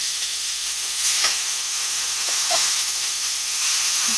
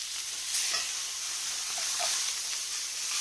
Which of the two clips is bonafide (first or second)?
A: second